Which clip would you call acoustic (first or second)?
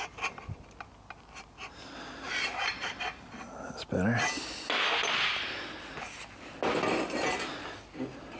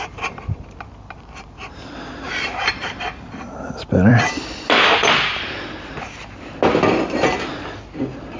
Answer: first